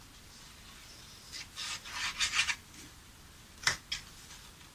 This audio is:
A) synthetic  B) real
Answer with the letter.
B